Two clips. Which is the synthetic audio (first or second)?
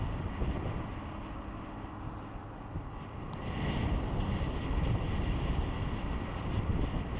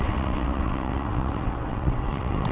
second